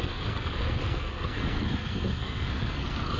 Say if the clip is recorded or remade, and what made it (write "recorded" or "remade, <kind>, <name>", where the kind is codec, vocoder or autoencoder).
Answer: remade, codec, SNAC